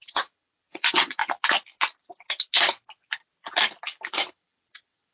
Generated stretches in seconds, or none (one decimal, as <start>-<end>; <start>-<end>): 0.0-1.2; 4.3-5.1